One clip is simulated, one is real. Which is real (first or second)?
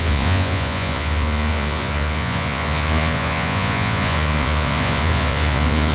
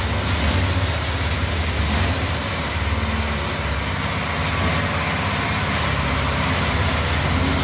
second